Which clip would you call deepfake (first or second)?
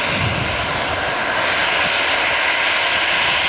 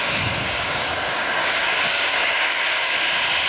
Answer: second